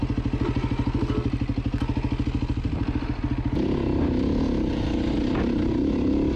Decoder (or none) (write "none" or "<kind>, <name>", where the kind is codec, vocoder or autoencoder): none